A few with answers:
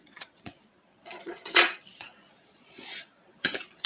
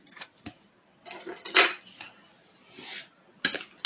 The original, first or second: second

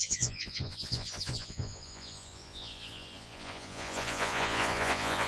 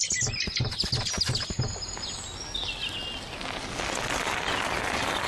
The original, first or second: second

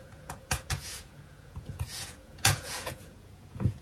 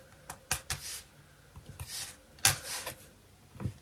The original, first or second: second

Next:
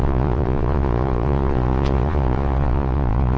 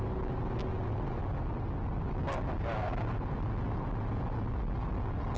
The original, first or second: second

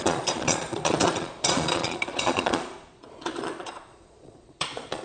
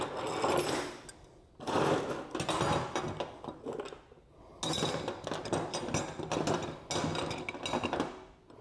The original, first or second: second